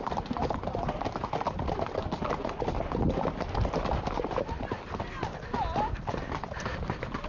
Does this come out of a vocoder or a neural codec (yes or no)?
no